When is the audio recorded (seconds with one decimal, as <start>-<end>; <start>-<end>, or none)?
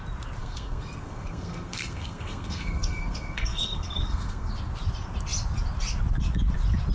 0.0-0.4; 4.5-6.9